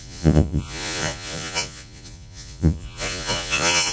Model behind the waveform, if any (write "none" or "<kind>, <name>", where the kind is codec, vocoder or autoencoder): vocoder, Vocos